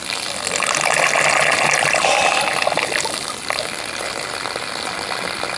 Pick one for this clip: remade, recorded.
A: recorded